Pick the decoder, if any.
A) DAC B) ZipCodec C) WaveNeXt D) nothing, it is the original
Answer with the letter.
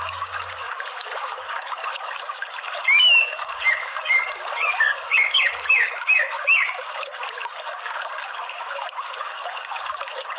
A